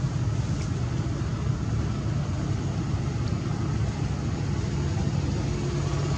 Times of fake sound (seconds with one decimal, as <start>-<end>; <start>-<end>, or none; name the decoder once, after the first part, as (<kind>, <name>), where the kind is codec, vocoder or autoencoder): none